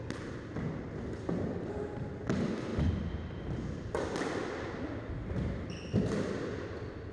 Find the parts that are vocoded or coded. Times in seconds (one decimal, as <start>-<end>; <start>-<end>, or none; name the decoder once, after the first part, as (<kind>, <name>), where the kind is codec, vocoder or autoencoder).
none